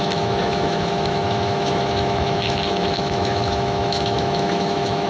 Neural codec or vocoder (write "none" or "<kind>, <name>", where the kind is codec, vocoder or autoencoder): autoencoder, DAC-VAE